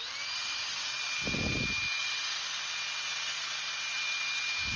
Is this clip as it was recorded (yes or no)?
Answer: yes